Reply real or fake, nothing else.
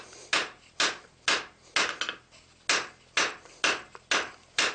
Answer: real